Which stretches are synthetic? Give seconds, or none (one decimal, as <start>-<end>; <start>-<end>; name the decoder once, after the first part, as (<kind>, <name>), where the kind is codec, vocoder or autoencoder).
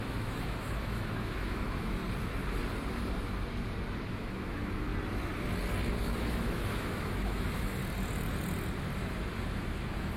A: 0.0-2.0 (autoencoder, DAC-VAE); 4.1-4.9; 6.0-7.8; 9.6-10.2